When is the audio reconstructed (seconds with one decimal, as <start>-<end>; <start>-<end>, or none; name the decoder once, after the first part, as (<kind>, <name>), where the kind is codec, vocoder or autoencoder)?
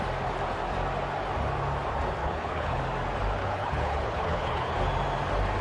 2.2-2.8 (codec, HILCodec); 3.4-4.8